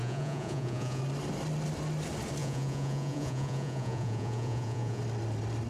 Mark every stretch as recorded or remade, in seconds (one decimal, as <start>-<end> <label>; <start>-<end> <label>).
0.0-1.0 remade; 1.0-2.4 recorded; 2.4-5.0 remade; 5.0-5.7 recorded